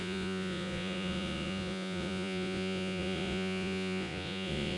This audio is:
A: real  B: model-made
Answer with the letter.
B